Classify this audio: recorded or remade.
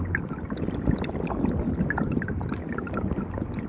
recorded